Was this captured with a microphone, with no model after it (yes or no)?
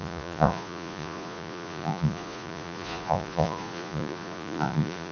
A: no